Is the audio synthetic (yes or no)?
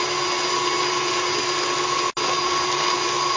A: no